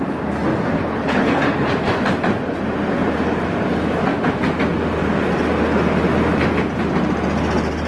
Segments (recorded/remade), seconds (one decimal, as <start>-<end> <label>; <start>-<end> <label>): 0.0-0.8 recorded; 0.8-1.4 remade; 1.4-7.9 recorded